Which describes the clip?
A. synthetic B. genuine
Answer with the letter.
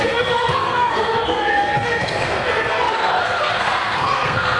A